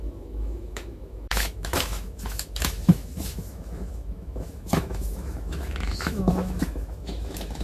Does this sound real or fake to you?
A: fake